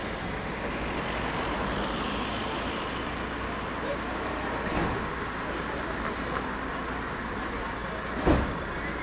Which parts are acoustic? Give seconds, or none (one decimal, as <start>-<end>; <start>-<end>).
0.0-9.0